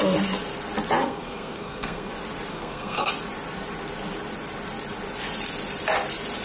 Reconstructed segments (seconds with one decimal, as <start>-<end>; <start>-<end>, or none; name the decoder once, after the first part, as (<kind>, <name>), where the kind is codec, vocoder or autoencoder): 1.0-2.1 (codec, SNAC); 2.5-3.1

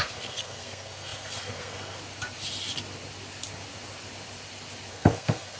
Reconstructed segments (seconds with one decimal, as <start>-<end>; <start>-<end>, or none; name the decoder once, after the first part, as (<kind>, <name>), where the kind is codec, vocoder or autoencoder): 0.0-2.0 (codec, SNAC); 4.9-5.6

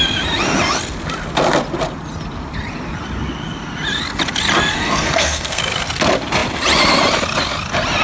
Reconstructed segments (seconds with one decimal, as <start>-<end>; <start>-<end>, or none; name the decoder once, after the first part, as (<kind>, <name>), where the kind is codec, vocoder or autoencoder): 4.7-5.6 (codec, SNAC)

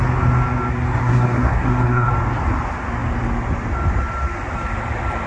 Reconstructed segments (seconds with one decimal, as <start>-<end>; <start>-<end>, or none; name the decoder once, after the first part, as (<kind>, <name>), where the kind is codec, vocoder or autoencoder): 1.0-2.1 (codec, SNAC)

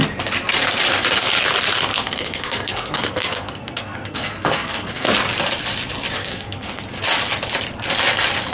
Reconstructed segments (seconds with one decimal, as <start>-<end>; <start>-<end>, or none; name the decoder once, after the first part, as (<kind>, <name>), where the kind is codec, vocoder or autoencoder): 1.9-5.1 (codec, SNAC); 6.2-6.8

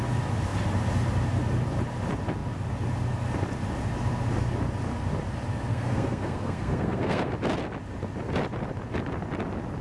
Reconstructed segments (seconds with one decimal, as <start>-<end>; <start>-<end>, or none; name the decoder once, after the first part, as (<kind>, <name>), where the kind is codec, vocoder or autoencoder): 5.7-7.3 (codec, SNAC)